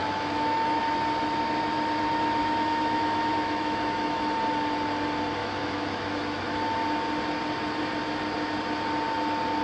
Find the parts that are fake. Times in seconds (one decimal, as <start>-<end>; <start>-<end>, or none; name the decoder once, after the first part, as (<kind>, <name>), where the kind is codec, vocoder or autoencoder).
0.0-0.8 (autoencoder, DAC-VAE); 2.4-4.3; 5.4-6.4